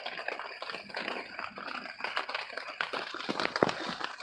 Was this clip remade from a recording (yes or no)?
no